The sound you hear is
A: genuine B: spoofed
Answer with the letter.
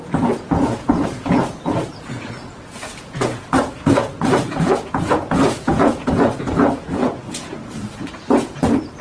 B